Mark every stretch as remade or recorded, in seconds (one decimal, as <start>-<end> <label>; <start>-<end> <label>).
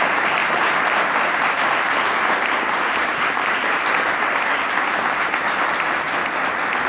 0.0-0.4 recorded; 0.4-4.5 remade; 4.5-6.9 recorded